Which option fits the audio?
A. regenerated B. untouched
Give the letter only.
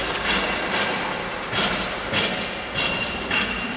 B